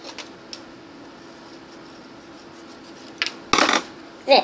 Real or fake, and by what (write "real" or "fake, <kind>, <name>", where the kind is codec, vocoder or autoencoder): real